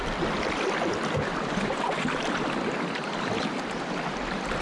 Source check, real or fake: real